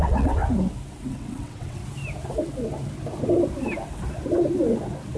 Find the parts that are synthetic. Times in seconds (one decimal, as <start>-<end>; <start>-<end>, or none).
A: 0.0-0.4; 1.1-1.8